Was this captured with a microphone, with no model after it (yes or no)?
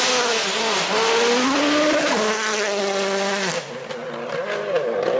yes